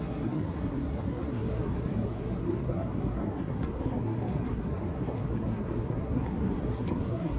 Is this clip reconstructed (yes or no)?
yes